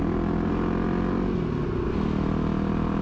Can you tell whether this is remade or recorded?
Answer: recorded